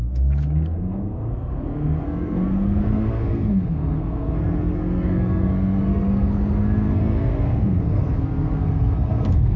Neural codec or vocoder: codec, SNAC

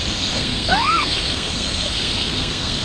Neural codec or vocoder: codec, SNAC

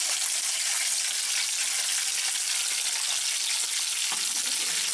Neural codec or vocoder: none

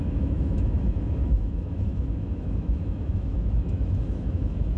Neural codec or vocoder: autoencoder, DAC-VAE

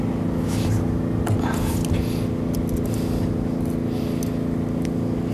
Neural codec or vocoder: none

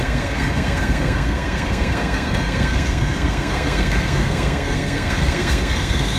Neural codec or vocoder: codec, SNAC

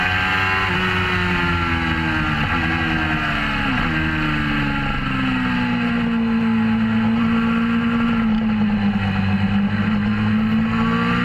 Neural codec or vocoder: none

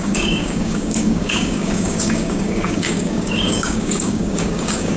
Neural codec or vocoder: codec, DAC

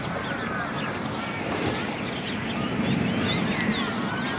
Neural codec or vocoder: none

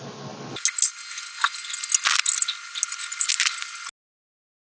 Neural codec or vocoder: none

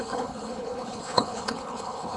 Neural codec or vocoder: codec, HILCodec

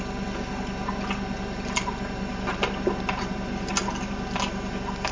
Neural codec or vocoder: none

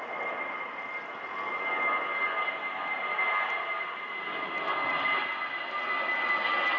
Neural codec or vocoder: none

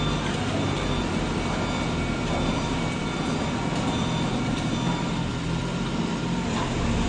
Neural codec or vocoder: none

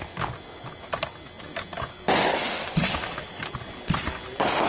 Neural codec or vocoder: none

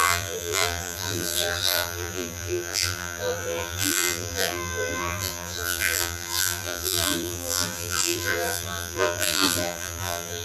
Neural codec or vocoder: vocoder, BigVGAN v2